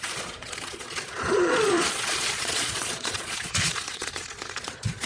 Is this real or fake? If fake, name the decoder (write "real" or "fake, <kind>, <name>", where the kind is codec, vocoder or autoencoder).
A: fake, vocoder, Vocos